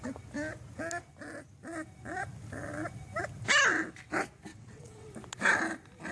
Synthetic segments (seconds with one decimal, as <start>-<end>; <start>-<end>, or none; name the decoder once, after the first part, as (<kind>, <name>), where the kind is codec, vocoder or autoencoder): 4.5-5.1 (vocoder, WaveNeXt)